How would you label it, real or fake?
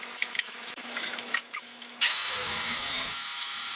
fake